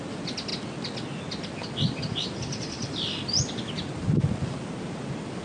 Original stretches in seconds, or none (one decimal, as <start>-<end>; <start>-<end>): 0.0-5.4